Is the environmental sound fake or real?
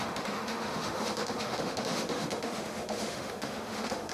fake